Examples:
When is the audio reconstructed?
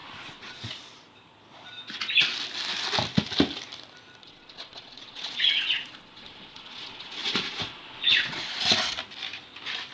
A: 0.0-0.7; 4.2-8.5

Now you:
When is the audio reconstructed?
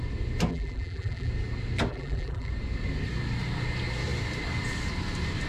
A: 0.5-1.3; 1.9-2.5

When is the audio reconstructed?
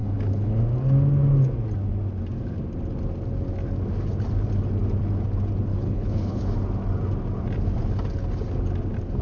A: 0.0-0.6; 5.7-6.5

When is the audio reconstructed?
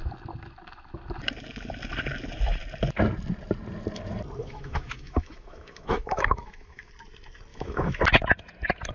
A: 4.4-6.9; 7.5-8.0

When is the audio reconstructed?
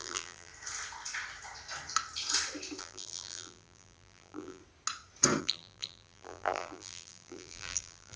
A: 0.0-0.5; 2.8-4.6; 5.4-8.2